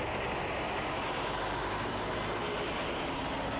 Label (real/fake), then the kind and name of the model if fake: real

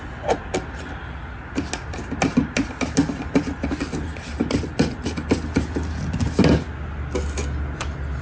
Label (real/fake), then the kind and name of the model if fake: real